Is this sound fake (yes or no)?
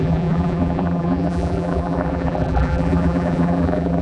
yes